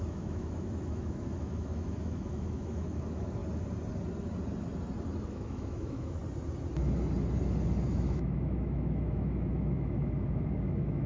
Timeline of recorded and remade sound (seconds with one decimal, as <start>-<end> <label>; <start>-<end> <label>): 0.0-3.4 remade; 3.4-5.3 recorded; 5.3-6.2 remade; 6.2-7.9 recorded; 7.9-11.1 remade